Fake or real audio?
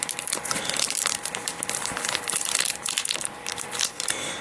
fake